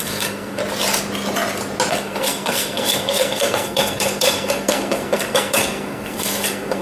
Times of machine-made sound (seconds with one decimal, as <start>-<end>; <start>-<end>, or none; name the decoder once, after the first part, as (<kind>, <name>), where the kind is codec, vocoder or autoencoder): 0.0-0.6 (codec, SNAC); 1.9-6.8